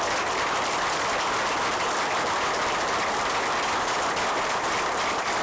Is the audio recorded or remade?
recorded